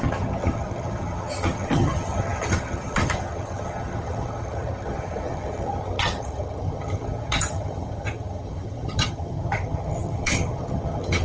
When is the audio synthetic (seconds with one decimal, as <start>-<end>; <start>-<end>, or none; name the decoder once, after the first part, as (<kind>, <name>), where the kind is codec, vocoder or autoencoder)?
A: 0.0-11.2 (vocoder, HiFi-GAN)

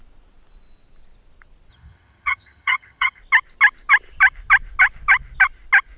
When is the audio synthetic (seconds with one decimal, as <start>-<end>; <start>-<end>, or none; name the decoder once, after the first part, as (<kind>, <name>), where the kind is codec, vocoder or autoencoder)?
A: 1.7-3.2 (vocoder, HiFi-GAN)

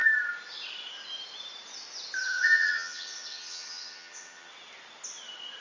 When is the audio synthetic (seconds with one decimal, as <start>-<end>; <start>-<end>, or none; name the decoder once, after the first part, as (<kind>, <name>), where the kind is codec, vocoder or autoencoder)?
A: 2.2-4.5 (vocoder, HiFi-GAN)

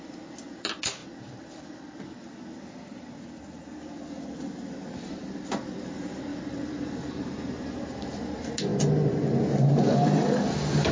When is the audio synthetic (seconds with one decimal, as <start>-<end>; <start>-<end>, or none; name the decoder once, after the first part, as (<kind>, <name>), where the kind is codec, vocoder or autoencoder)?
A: none

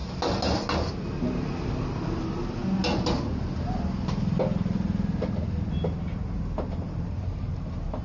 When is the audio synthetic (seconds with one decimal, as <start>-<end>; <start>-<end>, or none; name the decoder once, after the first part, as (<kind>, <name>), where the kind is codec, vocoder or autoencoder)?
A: none